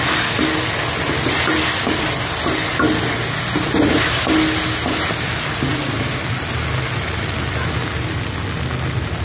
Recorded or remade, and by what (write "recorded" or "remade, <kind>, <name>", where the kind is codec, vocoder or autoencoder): recorded